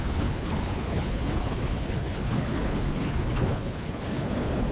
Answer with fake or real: fake